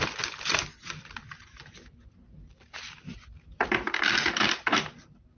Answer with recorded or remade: recorded